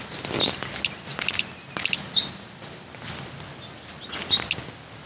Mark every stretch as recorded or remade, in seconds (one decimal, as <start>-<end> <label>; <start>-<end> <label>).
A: 0.0-5.1 recorded